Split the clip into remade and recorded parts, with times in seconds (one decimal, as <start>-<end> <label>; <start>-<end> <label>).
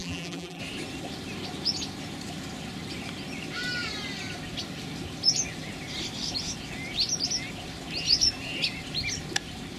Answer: 0.0-0.6 remade; 0.6-9.8 recorded